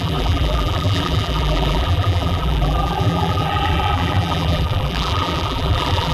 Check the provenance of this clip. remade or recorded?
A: remade